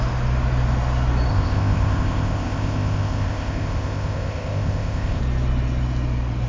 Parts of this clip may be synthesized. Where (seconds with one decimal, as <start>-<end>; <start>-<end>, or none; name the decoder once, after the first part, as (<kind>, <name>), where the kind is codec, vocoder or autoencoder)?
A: 1.3-5.2 (codec, ZipCodec)